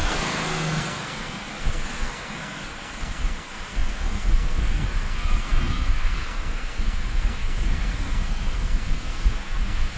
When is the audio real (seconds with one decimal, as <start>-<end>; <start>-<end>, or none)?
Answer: none

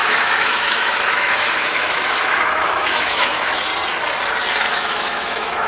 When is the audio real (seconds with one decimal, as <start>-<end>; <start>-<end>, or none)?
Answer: 3.7-4.6